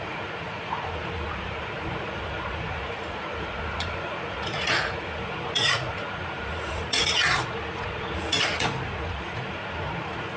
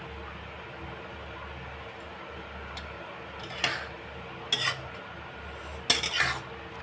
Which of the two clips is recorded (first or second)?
second